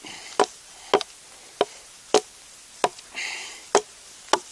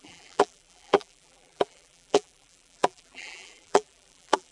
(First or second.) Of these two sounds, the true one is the first